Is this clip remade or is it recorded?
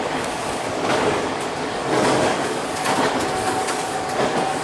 remade